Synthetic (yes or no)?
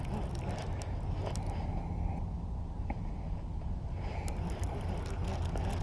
no